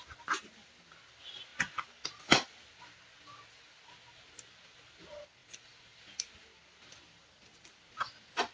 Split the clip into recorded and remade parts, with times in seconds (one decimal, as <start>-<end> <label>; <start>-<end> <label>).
0.0-5.4 recorded; 5.4-6.0 remade; 6.0-8.5 recorded